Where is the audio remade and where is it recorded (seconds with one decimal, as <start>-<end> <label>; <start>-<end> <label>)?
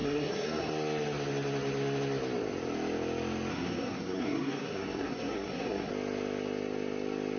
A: 0.0-0.7 remade; 0.7-3.5 recorded; 3.5-5.9 remade; 5.9-7.4 recorded